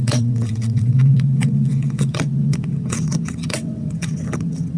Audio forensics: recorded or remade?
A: remade